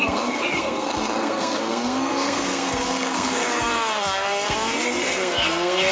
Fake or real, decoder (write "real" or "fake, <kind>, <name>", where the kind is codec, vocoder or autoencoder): fake, codec, SNAC